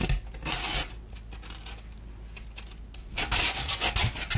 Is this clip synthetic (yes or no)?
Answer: no